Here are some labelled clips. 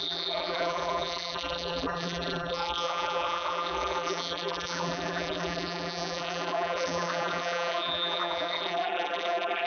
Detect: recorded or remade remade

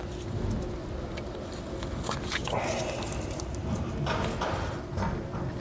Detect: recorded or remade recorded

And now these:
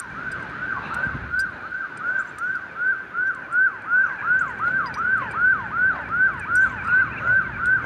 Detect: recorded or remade recorded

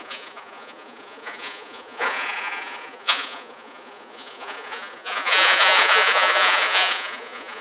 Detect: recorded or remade remade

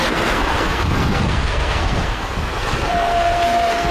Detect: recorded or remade remade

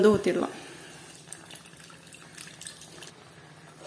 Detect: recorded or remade recorded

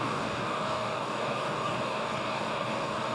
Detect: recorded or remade remade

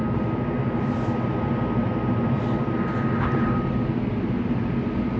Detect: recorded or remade recorded